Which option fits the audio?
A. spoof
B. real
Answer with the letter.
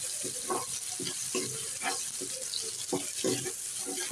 B